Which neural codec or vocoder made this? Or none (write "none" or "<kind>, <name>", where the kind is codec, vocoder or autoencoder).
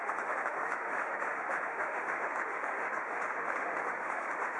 autoencoder, DAC-VAE